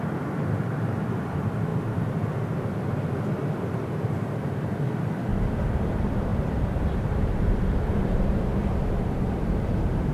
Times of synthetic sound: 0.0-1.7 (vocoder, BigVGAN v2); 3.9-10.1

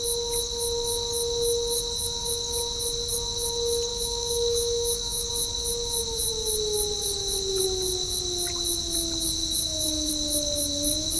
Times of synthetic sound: 3.9-5.3 (autoencoder, DAC-VAE); 9.4-10.1